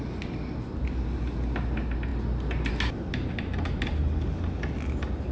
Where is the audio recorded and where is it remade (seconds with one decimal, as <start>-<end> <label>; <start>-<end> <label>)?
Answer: 0.0-5.3 recorded